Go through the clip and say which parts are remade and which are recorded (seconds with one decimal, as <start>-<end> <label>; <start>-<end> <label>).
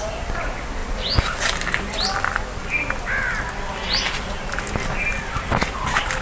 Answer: 0.0-6.2 recorded